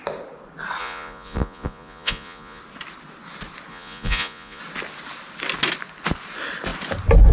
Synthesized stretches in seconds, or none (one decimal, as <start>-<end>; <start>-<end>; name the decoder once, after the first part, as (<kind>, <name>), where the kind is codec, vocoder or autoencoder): 0.8-2.6 (vocoder, Vocos); 3.7-4.6